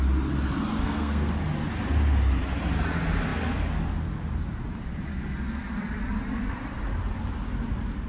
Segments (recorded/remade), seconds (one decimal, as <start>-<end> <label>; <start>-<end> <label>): 0.0-0.8 recorded; 0.8-1.3 remade; 1.3-8.1 recorded